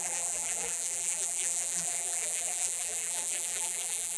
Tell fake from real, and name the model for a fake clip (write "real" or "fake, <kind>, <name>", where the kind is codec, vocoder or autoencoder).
fake, vocoder, BigVGAN v2